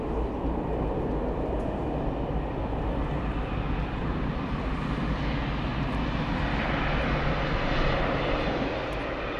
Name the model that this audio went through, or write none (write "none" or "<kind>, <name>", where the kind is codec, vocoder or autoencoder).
none